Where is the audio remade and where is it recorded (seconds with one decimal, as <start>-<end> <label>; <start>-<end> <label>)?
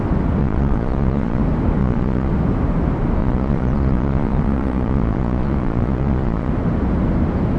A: 0.0-0.4 recorded; 0.4-1.4 remade; 1.4-1.8 recorded; 1.8-2.3 remade; 2.3-3.2 recorded; 3.2-6.5 remade; 6.5-7.6 recorded